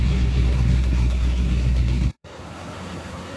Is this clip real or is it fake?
fake